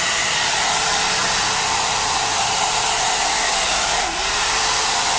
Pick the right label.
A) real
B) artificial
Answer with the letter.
B